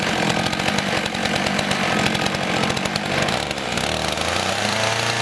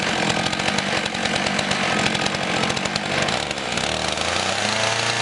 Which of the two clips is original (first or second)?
second